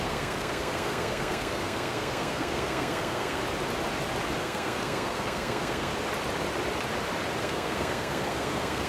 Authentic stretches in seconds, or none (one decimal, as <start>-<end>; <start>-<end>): 3.4-4.4; 5.9-7.4